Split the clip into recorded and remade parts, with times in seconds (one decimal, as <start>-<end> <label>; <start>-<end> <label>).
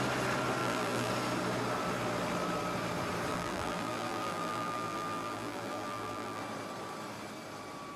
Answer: 0.0-0.6 recorded; 0.6-1.1 remade; 1.1-3.3 recorded; 3.3-6.4 remade; 6.4-8.0 recorded